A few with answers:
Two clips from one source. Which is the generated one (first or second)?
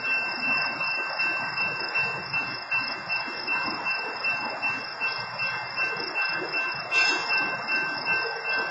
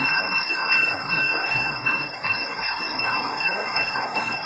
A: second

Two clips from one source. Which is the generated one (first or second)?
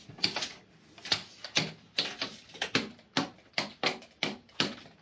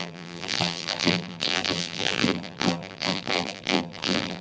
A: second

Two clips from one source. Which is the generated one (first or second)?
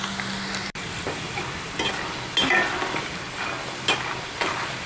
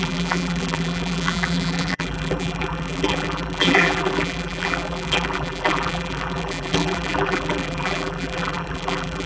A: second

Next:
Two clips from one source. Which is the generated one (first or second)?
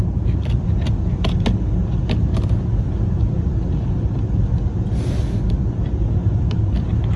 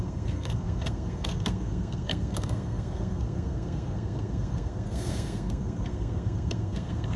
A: second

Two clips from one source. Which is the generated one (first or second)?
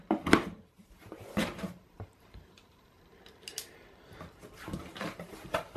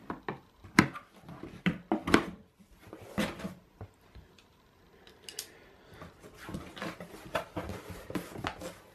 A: first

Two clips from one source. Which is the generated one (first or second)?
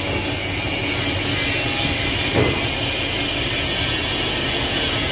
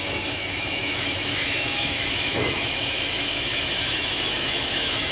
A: second